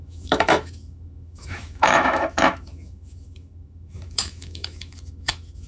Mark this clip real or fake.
fake